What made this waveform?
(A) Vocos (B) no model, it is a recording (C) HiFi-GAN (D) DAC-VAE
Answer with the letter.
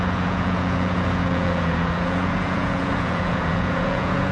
A